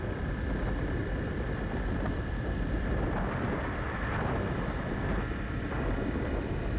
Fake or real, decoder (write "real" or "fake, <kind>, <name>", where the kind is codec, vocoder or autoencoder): real